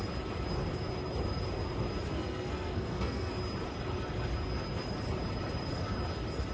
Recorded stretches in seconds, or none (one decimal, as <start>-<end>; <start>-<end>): 0.0-2.1; 3.3-6.5